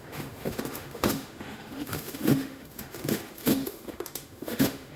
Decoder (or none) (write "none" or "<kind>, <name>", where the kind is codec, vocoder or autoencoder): autoencoder, DAC-VAE